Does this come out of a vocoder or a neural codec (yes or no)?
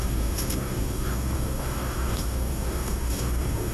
yes